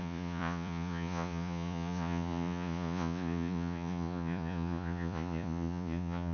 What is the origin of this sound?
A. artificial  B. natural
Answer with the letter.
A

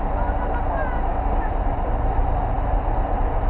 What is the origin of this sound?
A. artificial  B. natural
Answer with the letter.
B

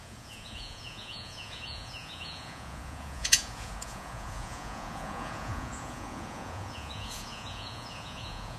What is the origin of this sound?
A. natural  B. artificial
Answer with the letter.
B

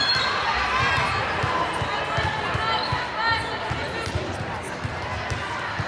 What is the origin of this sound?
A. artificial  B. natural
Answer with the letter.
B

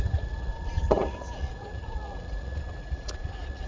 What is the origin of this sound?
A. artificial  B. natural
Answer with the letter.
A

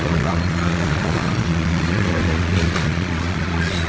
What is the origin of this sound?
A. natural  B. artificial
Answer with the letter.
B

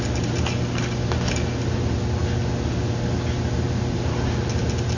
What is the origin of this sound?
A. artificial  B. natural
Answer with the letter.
B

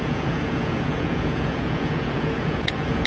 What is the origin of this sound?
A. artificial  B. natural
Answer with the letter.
A